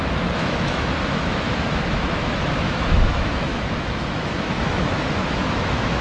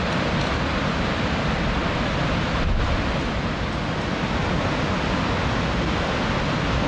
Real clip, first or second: second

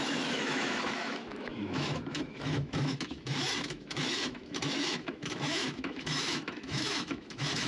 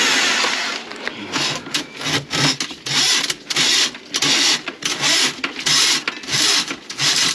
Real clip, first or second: second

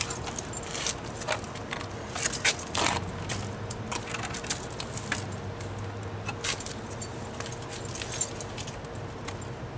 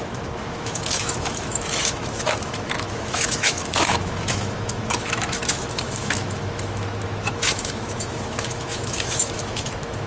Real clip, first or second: first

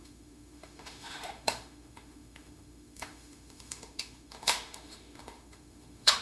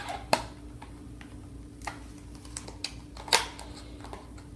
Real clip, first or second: second